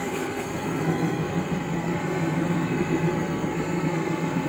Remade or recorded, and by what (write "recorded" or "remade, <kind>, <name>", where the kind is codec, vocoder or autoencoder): remade, codec, SNAC